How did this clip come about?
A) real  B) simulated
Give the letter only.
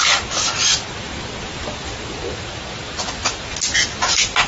A